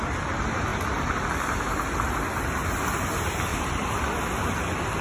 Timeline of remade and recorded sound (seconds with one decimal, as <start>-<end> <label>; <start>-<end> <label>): 0.0-3.5 recorded; 3.5-4.0 remade; 4.0-5.0 recorded